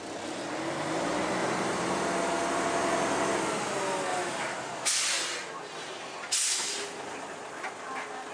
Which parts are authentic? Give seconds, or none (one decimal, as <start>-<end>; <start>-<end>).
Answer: 0.0-1.4; 2.1-4.1; 4.9-8.3